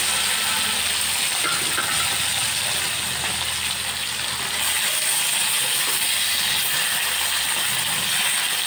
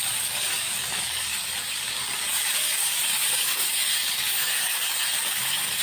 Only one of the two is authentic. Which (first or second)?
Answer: first